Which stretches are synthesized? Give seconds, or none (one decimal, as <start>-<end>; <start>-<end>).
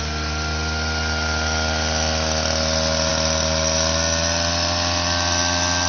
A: none